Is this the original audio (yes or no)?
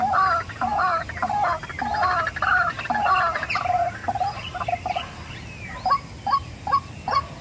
yes